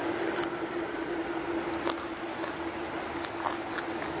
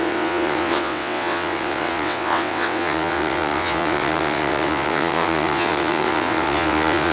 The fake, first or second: second